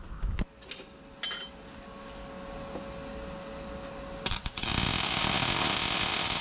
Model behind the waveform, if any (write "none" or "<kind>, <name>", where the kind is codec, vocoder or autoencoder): none